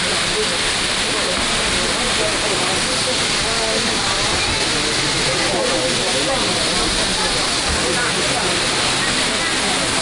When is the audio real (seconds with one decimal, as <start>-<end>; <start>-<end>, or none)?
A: 0.0-10.0